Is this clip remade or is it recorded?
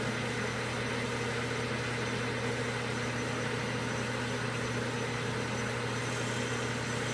recorded